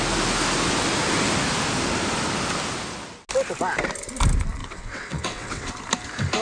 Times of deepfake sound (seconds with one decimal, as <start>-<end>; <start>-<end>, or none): 4.6-5.7